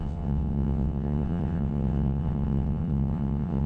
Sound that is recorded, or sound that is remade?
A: remade